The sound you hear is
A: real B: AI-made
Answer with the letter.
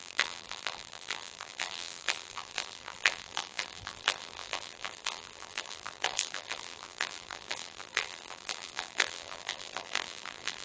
B